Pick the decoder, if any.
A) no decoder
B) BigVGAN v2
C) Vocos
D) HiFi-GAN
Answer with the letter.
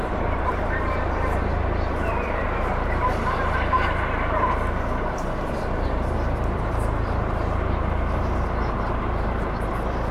B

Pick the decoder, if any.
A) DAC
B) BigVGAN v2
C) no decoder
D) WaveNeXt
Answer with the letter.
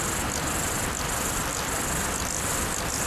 C